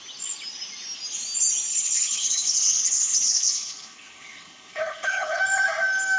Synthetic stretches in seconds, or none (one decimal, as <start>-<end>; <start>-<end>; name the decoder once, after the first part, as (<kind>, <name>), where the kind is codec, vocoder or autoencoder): 1.7-5.4 (codec, HILCodec)